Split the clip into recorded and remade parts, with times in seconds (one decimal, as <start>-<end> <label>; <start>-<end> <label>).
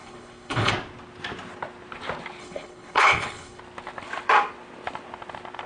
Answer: 0.0-0.7 remade; 0.7-2.4 recorded; 2.4-3.6 remade; 3.6-5.7 recorded